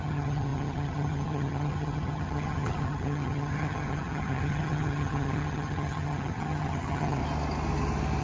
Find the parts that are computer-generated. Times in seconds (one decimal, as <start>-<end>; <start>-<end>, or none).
0.0-7.2